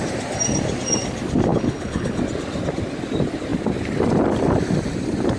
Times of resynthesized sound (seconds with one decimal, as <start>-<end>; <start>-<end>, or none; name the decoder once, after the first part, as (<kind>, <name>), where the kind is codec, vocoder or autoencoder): 1.5-2.2 (codec, HILCodec)